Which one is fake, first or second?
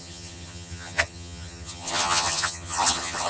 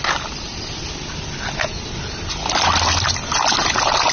first